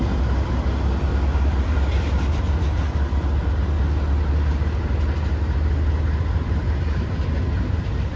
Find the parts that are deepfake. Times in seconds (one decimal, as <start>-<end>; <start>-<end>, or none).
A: 1.1-2.4